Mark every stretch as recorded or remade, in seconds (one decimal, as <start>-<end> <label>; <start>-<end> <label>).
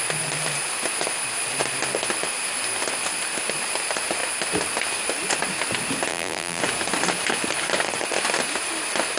0.0-6.1 recorded; 6.1-6.6 remade; 6.6-9.2 recorded